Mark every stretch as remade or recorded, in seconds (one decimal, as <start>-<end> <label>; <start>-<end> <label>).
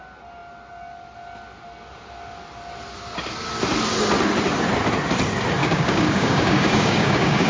0.0-5.6 recorded; 5.6-7.5 remade